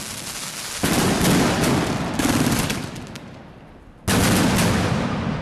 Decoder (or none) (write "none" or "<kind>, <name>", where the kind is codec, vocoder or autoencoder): none